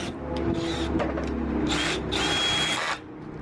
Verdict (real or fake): real